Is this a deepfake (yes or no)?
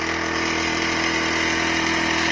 no